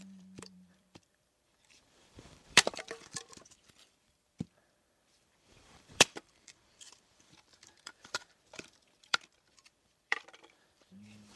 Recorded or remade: remade